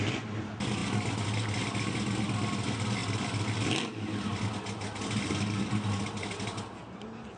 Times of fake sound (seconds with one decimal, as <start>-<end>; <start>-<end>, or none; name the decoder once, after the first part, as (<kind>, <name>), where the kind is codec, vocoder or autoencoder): none